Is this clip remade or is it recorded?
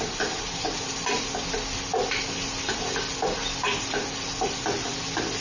recorded